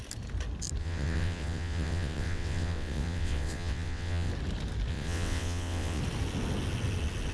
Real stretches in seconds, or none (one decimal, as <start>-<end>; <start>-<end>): 0.0-0.8; 4.3-4.9; 6.0-7.3